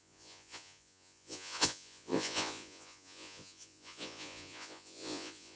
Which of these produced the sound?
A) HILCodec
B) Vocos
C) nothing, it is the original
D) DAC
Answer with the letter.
B